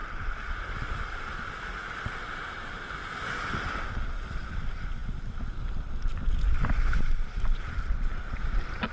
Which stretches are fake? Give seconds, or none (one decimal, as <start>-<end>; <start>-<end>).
none